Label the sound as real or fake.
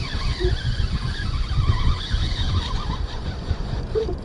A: fake